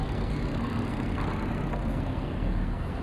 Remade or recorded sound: remade